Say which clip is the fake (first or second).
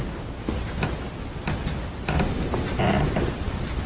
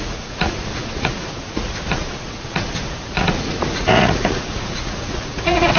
second